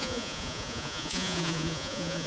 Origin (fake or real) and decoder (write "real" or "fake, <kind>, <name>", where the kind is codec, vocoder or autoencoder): fake, vocoder, Vocos